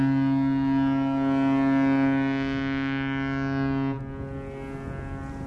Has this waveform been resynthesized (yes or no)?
no